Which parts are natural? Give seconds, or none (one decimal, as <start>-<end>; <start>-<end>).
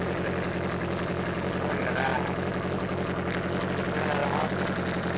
0.0-5.2